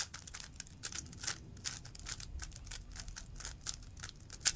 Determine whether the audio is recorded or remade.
recorded